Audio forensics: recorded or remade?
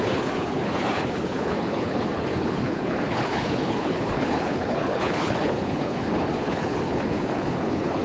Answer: remade